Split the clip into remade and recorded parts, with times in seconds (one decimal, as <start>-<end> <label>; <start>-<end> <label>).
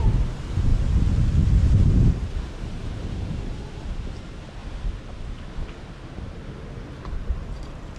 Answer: 0.0-0.7 remade; 0.7-1.7 recorded; 1.7-4.6 remade; 4.6-5.8 recorded; 5.8-8.0 remade